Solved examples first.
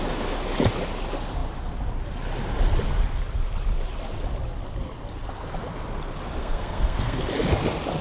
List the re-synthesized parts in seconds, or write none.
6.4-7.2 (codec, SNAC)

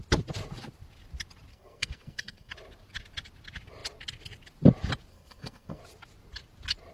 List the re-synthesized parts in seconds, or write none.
1.5-2.5 (codec, SNAC); 5.1-5.8

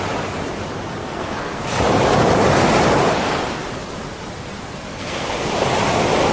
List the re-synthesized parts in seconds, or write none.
1.0-1.6 (codec, SNAC); 4.9-5.5